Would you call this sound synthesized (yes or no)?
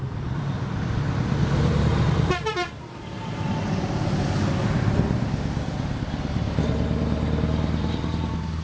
yes